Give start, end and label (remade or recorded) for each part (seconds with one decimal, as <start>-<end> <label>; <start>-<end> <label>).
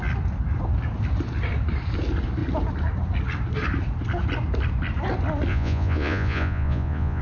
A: 0.0-5.5 recorded; 5.5-7.2 remade